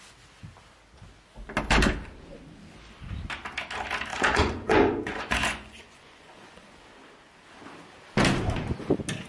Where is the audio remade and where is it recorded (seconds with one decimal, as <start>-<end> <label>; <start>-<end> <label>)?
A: 0.0-4.1 recorded; 4.1-6.8 remade; 6.8-9.3 recorded